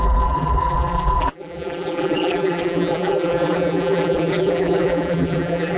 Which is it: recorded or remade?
remade